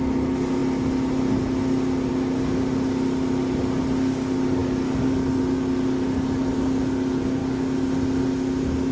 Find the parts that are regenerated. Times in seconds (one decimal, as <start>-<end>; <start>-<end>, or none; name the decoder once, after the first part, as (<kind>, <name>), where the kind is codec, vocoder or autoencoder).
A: none